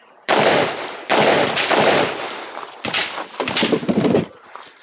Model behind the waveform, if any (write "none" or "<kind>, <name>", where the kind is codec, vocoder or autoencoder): none